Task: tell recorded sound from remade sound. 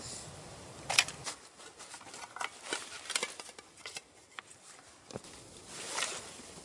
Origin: recorded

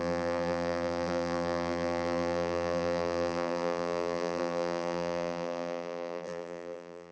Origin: remade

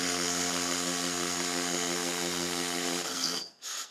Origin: remade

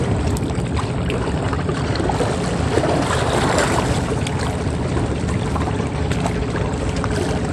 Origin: recorded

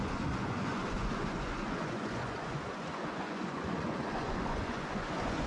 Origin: remade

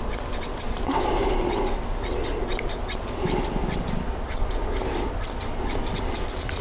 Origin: recorded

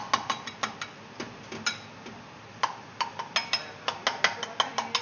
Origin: recorded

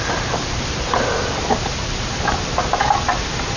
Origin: remade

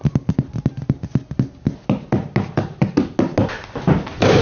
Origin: recorded